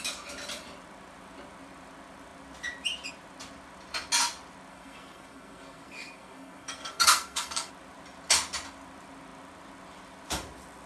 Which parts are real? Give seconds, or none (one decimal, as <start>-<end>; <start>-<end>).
0.0-4.7; 7.7-10.9